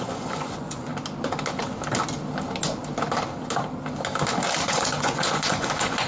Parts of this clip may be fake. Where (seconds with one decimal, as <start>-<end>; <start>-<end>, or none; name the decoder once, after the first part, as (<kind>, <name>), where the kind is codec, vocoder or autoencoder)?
0.0-0.9 (vocoder, Vocos); 4.6-6.1